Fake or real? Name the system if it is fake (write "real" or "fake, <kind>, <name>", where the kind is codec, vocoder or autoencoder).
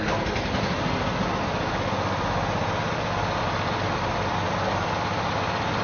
real